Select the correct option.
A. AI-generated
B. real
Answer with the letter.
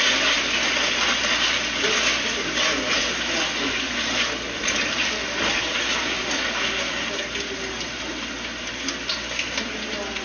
B